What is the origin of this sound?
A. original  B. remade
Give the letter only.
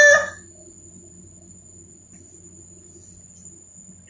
A